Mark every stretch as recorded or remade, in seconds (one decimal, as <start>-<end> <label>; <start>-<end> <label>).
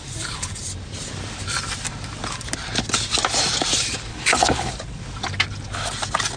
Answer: 0.0-4.1 recorded; 4.1-4.7 remade; 4.7-6.4 recorded